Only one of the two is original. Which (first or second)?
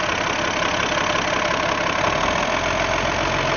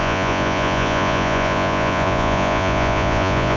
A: first